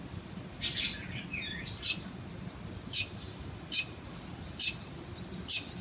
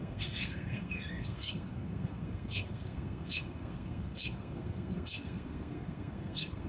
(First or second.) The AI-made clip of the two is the second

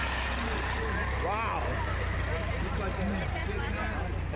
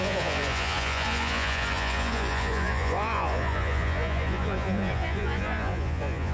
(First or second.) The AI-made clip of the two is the second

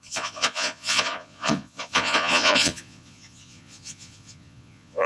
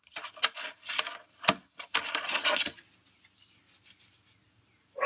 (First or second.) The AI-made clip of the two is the first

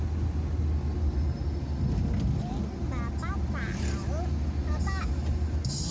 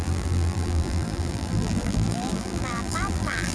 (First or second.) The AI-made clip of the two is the second